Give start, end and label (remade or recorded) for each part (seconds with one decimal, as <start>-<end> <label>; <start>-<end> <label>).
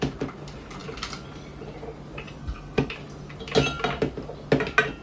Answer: 0.0-2.4 recorded; 2.4-2.9 remade; 2.9-5.0 recorded